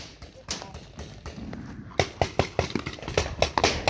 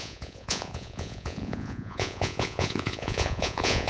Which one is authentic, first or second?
first